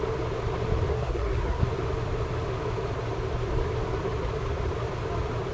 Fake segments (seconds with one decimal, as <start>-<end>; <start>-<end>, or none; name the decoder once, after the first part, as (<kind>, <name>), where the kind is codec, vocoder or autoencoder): 0.9-1.6 (codec, SNAC)